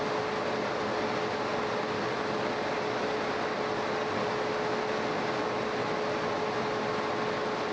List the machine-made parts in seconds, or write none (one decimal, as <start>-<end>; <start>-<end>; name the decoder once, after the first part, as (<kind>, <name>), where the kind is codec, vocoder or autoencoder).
none